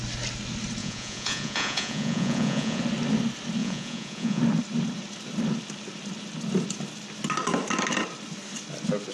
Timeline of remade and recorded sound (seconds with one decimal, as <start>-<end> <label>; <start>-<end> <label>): 0.0-0.8 recorded; 0.8-2.8 remade; 2.8-3.6 recorded; 3.6-4.4 remade; 4.4-9.1 recorded